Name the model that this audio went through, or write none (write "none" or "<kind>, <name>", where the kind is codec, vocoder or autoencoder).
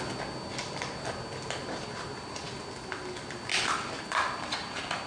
none